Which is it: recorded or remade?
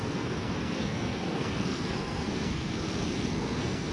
remade